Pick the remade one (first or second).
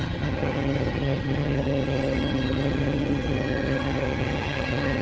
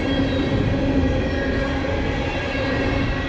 first